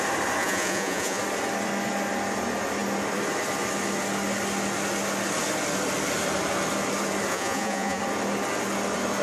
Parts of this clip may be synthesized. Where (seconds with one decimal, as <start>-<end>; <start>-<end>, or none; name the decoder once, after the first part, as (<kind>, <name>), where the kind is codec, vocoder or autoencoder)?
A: 0.4-1.2 (vocoder, Vocos); 7.3-8.0